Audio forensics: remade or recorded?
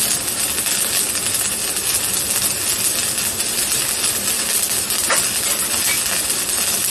recorded